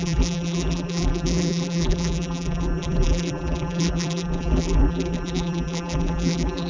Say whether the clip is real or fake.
fake